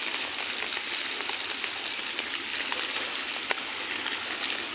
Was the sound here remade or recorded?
recorded